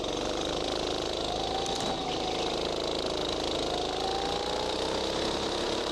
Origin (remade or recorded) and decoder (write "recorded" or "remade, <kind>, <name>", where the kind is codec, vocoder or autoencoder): recorded